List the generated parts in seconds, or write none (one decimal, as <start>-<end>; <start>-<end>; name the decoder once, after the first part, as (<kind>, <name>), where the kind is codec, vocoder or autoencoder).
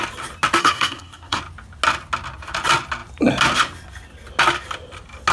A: 0.6-1.4 (codec, SNAC)